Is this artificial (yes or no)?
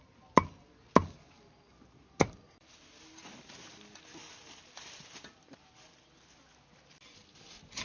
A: no